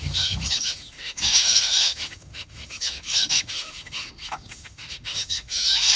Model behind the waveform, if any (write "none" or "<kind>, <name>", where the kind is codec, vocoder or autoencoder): autoencoder, DAC-VAE